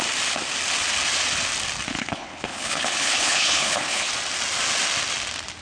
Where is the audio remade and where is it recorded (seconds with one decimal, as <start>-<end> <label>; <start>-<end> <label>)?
0.0-1.9 recorded; 1.9-4.1 remade; 4.1-5.6 recorded